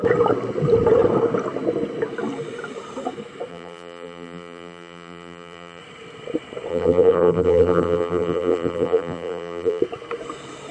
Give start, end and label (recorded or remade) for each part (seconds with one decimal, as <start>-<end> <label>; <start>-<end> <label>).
0.0-3.5 recorded; 3.5-5.8 remade; 5.8-6.7 recorded; 6.7-9.8 remade; 9.8-10.7 recorded